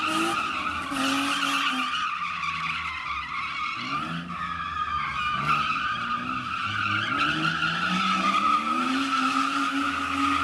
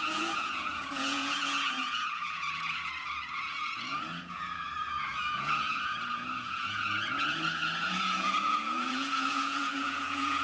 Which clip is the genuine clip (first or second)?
first